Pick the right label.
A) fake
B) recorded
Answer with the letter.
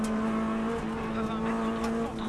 B